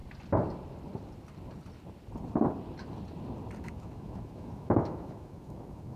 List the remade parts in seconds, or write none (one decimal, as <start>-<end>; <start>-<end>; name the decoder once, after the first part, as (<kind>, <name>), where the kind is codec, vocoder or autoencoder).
3.6-6.0 (autoencoder, DAC-VAE)